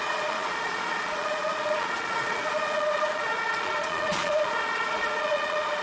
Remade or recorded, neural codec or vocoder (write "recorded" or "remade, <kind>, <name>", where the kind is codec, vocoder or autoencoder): remade, vocoder, Vocos